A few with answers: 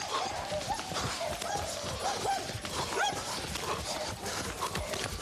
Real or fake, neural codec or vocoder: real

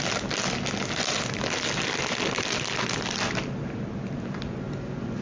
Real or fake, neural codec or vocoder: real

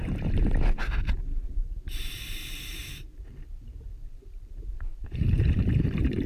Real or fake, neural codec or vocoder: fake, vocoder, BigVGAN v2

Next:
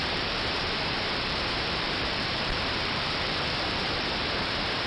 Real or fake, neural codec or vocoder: fake, vocoder, BigVGAN v2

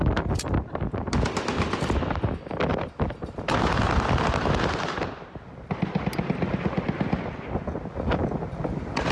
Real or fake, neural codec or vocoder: real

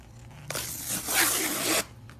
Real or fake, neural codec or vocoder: fake, vocoder, BigVGAN v2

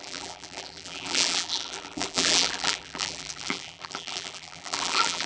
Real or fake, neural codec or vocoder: fake, vocoder, BigVGAN v2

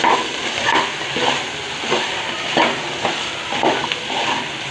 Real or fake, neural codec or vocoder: real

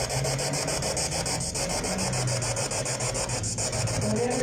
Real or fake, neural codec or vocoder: real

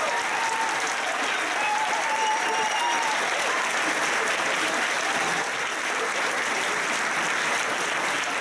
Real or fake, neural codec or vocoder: real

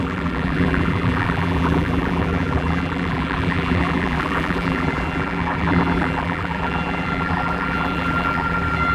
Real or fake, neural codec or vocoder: fake, vocoder, BigVGAN v2